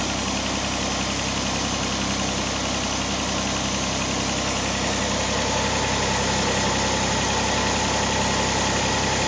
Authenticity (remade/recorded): recorded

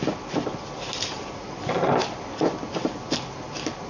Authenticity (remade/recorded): remade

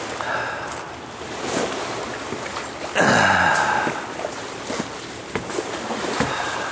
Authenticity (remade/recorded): recorded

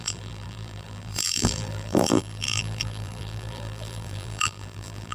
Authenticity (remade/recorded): remade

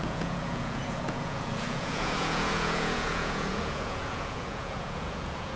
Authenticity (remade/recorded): remade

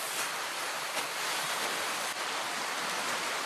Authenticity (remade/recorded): recorded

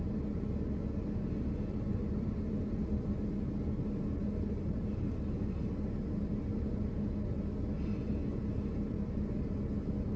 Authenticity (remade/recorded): recorded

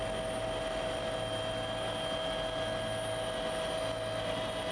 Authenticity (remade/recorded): recorded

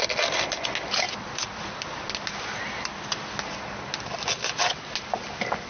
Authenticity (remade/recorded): recorded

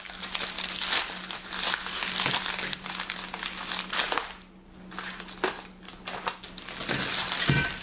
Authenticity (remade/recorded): recorded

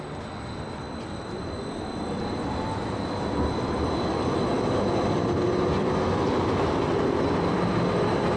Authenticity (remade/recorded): recorded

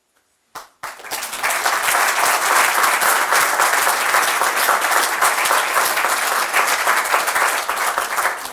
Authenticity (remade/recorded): recorded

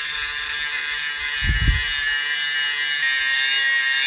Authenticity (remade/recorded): recorded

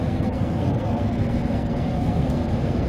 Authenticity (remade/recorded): remade